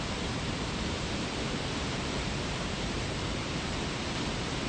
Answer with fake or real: fake